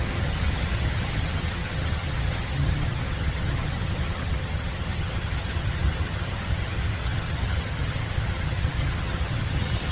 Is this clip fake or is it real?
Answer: fake